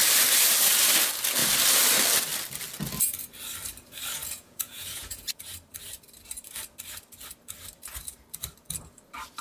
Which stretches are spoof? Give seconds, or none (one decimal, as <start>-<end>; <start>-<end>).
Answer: 4.2-5.4